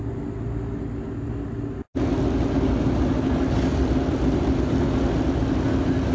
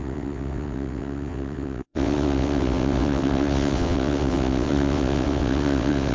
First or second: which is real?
first